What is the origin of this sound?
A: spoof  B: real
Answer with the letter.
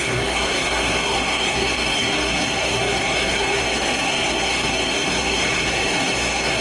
A